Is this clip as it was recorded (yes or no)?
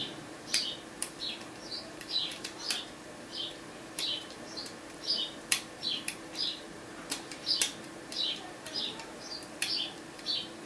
no